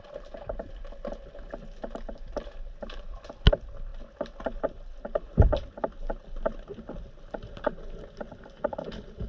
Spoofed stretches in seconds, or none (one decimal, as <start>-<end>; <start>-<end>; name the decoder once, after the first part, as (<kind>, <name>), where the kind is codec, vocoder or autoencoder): none